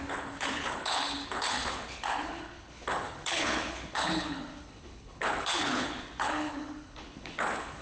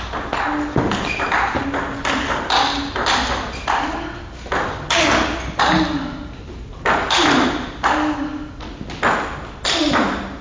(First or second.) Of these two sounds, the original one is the second